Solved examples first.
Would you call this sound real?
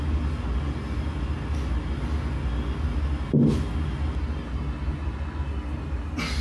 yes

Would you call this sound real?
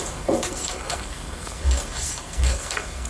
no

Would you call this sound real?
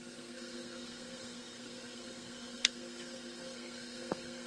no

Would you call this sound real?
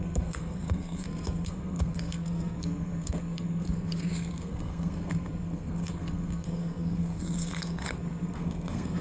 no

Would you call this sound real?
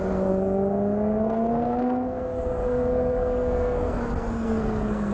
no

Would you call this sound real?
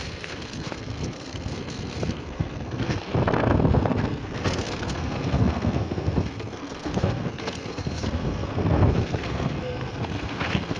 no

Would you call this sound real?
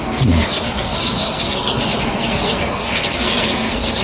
no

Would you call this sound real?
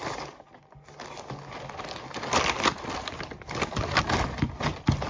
yes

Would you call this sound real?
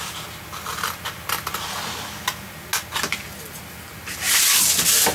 yes